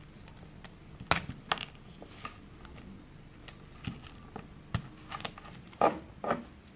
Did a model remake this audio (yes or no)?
no